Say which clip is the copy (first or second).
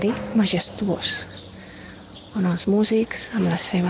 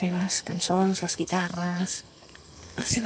second